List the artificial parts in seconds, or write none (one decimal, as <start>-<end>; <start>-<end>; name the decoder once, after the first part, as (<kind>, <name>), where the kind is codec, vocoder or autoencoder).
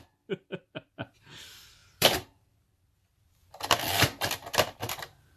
0.0-5.4 (vocoder, BigVGAN v2)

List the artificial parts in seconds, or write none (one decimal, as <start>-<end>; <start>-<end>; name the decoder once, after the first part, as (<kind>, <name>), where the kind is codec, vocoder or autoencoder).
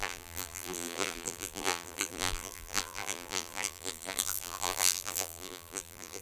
0.0-6.2 (vocoder, BigVGAN v2)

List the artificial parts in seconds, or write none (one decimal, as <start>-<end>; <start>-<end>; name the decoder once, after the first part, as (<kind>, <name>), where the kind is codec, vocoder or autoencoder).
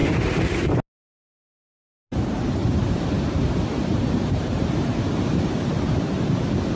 0.0-0.7 (vocoder, BigVGAN v2); 2.6-5.4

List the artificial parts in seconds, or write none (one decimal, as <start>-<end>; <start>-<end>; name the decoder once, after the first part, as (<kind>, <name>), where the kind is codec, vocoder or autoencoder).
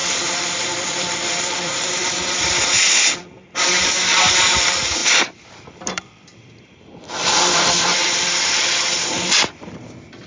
0.0-10.3 (vocoder, BigVGAN v2)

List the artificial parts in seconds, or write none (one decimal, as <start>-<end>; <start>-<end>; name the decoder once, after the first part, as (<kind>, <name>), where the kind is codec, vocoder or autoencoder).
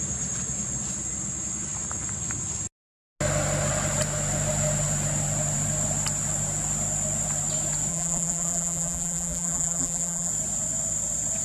7.9-10.3 (vocoder, BigVGAN v2)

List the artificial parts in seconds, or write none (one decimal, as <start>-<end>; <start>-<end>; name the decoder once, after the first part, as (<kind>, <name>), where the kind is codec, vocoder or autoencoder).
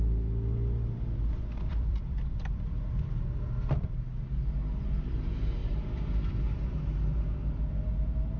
1.7-3.0 (vocoder, BigVGAN v2); 5.6-6.6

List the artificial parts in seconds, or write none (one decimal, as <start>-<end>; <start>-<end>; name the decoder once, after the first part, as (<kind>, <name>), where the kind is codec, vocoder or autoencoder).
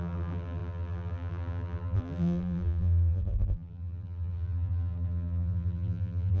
0.0-6.4 (vocoder, BigVGAN v2)